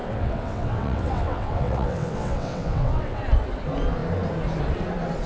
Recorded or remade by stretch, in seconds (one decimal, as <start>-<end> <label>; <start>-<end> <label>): 0.0-3.2 remade; 3.2-5.3 recorded